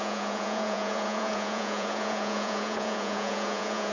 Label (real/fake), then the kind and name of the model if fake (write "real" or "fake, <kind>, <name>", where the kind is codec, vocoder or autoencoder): fake, vocoder, Vocos